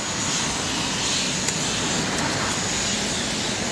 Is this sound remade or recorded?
recorded